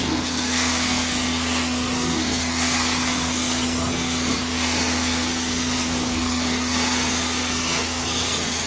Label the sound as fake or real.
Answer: fake